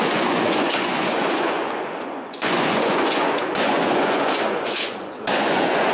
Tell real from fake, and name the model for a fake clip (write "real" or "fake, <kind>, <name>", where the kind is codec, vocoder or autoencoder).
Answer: fake, vocoder, Vocos